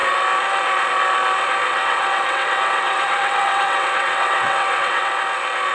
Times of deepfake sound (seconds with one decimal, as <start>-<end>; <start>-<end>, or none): 1.7-5.1